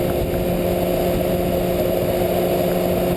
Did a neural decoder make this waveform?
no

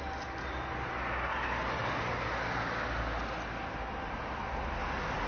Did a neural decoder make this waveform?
no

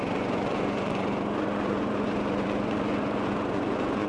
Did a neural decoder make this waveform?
yes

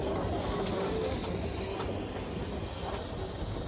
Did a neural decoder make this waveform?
no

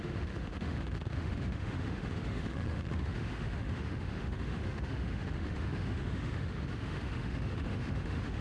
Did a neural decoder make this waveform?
yes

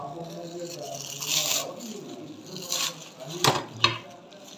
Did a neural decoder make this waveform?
no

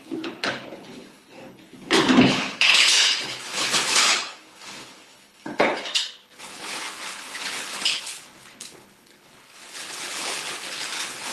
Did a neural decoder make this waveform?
yes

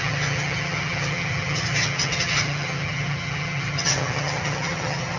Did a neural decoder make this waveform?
yes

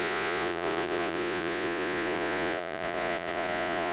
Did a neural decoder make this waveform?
yes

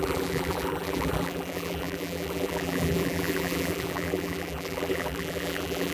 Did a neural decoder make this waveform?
yes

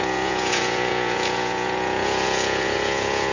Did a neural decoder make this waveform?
yes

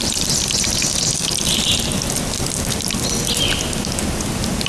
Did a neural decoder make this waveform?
no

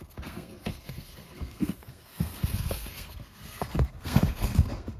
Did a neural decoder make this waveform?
yes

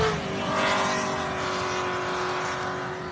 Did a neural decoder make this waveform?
no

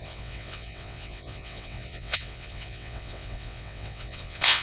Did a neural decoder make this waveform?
yes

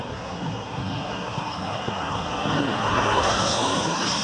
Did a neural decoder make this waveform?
yes